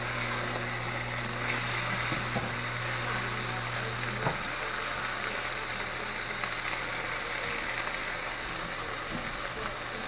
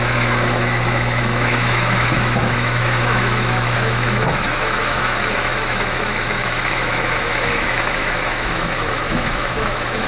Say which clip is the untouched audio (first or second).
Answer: first